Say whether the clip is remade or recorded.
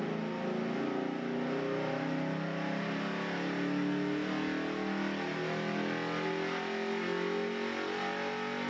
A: recorded